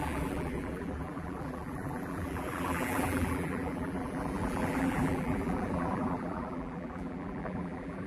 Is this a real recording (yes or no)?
no